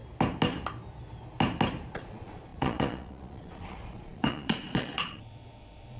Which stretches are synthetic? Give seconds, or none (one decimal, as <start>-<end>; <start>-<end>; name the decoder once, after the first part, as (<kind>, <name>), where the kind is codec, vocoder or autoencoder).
1.9-6.0 (vocoder, Vocos)

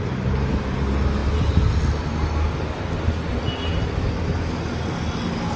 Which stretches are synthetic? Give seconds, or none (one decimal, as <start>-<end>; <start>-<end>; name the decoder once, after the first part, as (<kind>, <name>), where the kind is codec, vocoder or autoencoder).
none